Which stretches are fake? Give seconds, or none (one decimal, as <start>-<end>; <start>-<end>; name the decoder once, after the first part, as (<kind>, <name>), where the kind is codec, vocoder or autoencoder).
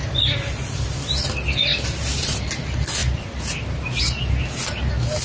1.7-2.5 (vocoder, BigVGAN v2)